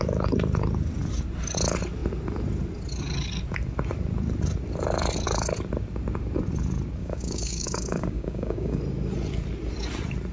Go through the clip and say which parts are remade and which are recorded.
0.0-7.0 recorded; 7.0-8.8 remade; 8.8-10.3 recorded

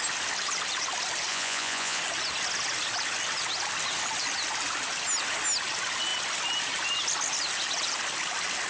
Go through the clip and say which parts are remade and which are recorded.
0.0-1.3 recorded; 1.3-2.0 remade; 2.0-8.7 recorded

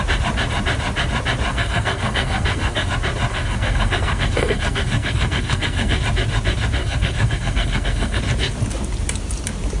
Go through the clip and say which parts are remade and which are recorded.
0.0-1.5 recorded; 1.5-2.9 remade; 2.9-3.3 recorded; 3.3-6.0 remade; 6.0-6.8 recorded; 6.8-8.2 remade; 8.2-9.8 recorded

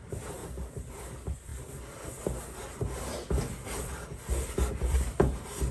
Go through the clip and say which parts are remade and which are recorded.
0.0-0.4 remade; 0.4-0.9 recorded; 0.9-1.5 remade; 1.5-4.9 recorded; 4.9-5.7 remade

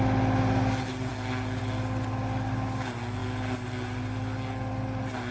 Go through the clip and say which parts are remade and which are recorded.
0.0-5.3 recorded

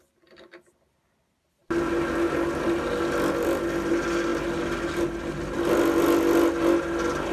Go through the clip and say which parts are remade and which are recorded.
0.0-7.3 recorded

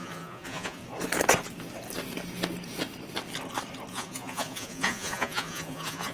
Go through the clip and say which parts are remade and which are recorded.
0.0-0.8 remade; 0.8-3.9 recorded; 3.9-6.1 remade

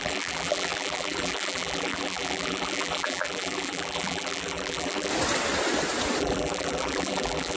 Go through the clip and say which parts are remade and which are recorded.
0.0-5.1 remade; 5.1-6.2 recorded; 6.2-7.6 remade